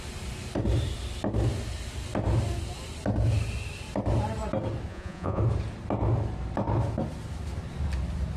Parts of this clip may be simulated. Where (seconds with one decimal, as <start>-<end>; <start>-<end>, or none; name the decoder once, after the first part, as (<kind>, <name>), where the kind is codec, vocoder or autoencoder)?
4.9-5.4 (vocoder, Vocos)